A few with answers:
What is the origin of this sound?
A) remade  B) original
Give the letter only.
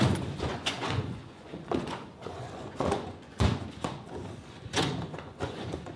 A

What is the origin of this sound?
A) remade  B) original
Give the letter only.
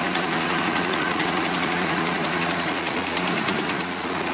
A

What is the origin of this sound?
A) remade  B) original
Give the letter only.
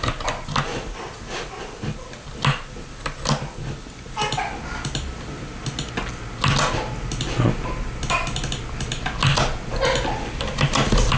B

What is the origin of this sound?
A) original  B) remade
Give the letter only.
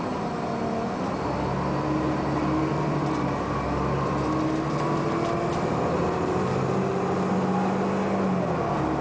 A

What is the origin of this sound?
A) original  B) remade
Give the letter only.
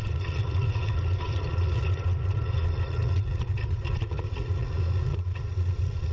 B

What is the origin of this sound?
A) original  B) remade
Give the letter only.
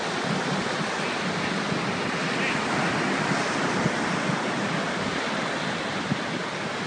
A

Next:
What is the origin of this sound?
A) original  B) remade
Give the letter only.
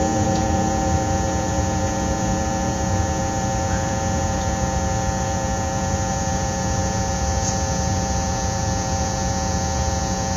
B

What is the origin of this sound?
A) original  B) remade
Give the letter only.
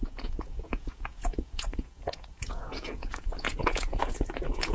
B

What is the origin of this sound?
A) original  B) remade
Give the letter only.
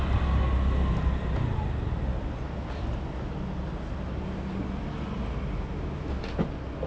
A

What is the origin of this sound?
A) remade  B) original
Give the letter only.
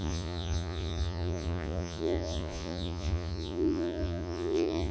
A